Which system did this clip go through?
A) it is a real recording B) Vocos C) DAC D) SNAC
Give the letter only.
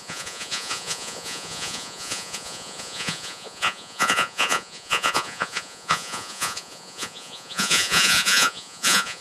B